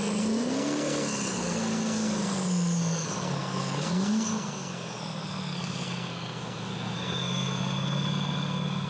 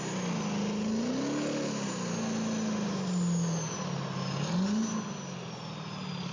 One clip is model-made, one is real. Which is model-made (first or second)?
first